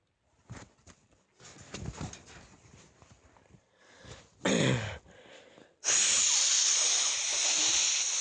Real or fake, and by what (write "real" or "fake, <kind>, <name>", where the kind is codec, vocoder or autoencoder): real